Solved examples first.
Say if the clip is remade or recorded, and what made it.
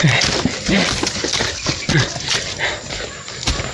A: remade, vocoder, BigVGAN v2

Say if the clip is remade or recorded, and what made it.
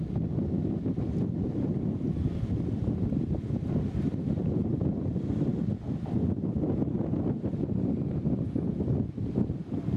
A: recorded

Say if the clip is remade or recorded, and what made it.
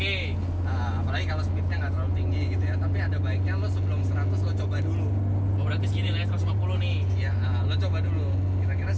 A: recorded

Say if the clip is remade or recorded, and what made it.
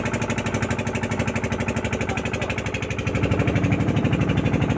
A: recorded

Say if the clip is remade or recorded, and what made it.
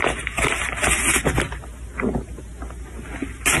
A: recorded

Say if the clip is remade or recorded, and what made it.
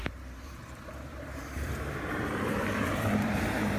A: remade, vocoder, BigVGAN v2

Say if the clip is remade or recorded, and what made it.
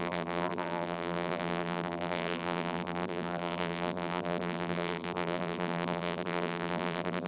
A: remade, vocoder, BigVGAN v2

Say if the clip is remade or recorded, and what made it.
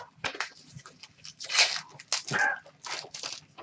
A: recorded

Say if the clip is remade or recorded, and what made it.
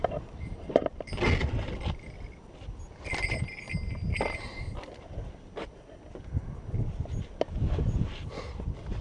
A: recorded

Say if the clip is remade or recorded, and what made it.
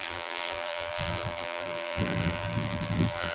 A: remade, vocoder, BigVGAN v2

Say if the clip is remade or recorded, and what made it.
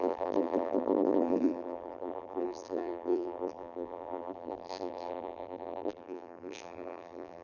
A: remade, vocoder, BigVGAN v2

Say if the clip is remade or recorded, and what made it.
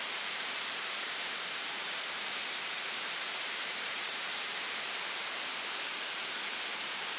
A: remade, vocoder, BigVGAN v2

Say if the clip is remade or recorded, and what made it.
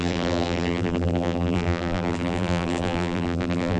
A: remade, vocoder, BigVGAN v2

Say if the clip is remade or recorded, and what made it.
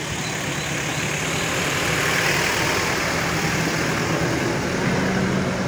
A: recorded